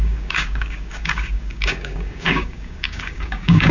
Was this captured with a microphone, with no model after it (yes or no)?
no